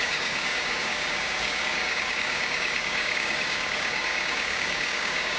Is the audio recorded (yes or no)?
no